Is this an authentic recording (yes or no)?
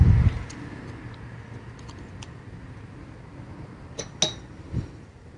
yes